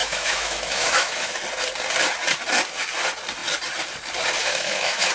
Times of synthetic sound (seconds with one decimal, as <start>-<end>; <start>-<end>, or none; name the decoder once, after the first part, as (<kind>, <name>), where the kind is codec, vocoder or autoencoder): 0.0-1.4 (autoencoder, DAC-VAE); 4.4-5.1